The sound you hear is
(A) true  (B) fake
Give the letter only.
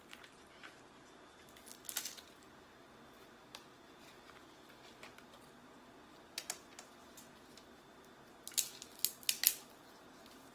A